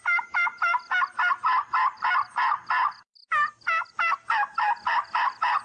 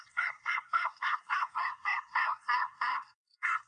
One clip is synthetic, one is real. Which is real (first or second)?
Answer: first